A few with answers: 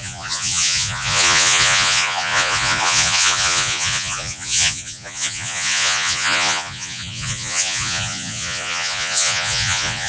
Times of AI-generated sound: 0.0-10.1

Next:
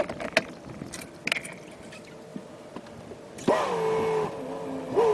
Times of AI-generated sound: none

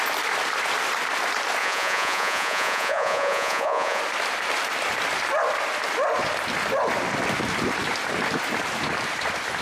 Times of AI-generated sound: 1.6-4.0

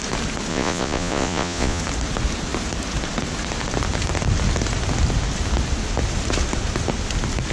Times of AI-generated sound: 0.5-1.8

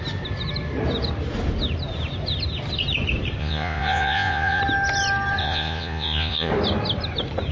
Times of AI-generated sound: 3.4-4.6; 5.4-6.5

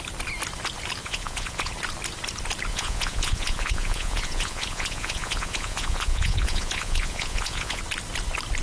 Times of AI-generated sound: 1.0-1.7; 2.7-7.8

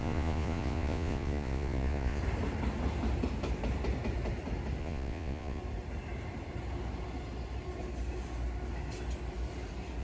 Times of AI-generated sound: 0.0-2.2; 4.8-5.6